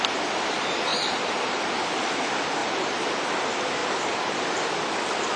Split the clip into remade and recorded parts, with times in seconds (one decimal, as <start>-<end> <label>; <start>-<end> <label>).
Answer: 0.0-0.9 recorded; 0.9-1.8 remade; 1.8-2.6 recorded; 2.6-3.2 remade; 3.2-3.8 recorded; 3.8-4.4 remade; 4.4-5.4 recorded